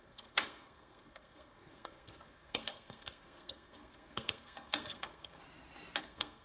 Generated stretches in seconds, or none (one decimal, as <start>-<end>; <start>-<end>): 0.0-5.4; 6.0-6.4